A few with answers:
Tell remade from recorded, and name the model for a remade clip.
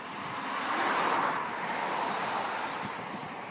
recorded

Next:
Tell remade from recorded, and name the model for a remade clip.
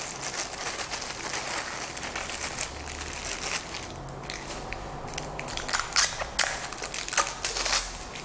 recorded